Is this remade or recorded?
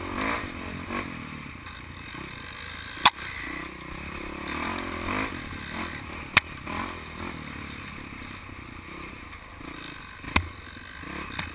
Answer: recorded